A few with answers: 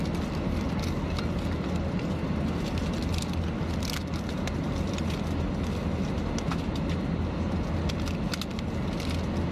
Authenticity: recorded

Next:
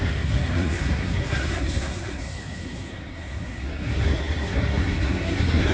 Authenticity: remade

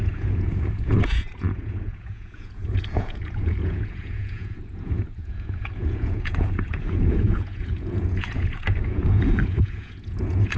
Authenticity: remade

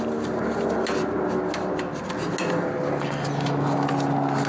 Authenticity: recorded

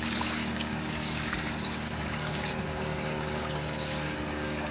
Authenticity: remade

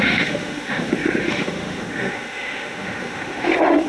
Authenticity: remade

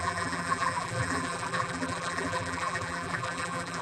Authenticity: remade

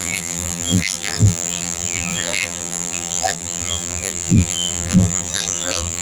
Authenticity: remade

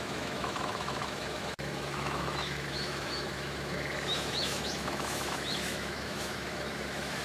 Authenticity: remade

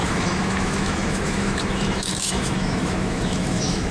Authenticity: remade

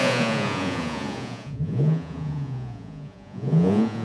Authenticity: remade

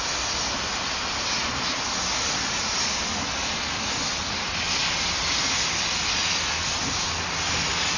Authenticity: recorded